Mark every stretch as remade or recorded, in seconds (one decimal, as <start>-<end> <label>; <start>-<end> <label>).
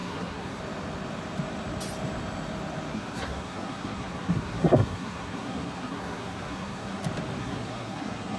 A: 0.0-0.6 remade; 0.6-2.9 recorded; 2.9-7.0 remade; 7.0-7.4 recorded; 7.4-8.4 remade